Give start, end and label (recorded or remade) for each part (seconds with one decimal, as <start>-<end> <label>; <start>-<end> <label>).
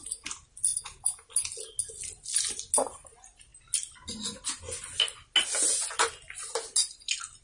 0.0-0.7 recorded; 0.7-1.3 remade; 1.3-7.4 recorded